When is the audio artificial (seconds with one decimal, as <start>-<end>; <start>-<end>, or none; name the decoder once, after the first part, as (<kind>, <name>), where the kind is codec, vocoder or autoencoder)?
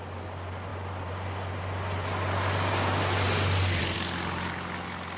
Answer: none